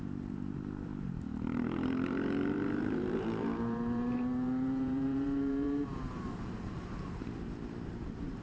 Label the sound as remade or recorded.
remade